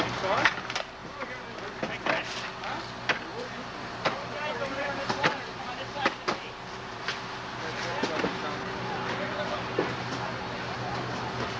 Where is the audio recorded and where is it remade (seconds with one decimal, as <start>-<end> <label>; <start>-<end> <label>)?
0.0-3.3 recorded; 3.3-7.2 remade; 7.2-7.9 recorded; 7.9-9.1 remade; 9.1-11.6 recorded